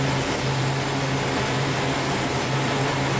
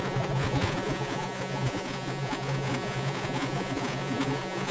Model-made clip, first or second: second